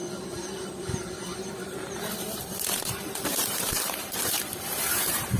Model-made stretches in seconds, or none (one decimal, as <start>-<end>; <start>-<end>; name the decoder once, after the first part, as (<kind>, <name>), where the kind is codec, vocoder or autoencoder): 0.0-5.4 (vocoder, BigVGAN v2)